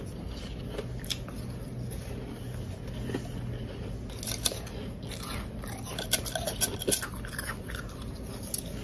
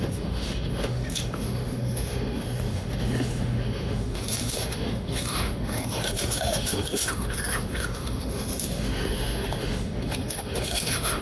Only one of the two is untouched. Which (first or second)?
first